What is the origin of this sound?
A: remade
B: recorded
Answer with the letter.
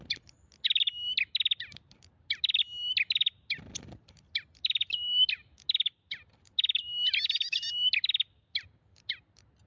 B